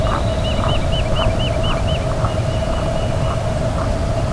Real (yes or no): yes